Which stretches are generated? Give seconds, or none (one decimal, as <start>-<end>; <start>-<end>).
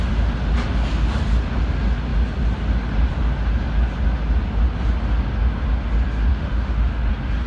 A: 6.3-7.1